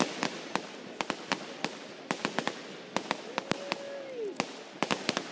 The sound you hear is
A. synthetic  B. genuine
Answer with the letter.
B